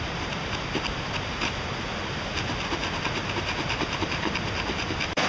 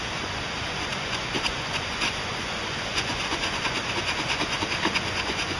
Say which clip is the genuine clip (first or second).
first